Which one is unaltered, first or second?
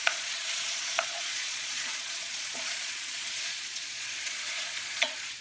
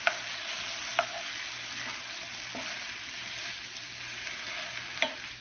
second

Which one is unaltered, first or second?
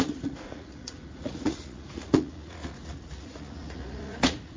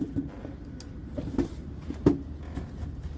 second